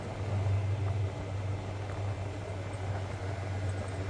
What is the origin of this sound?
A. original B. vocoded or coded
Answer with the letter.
A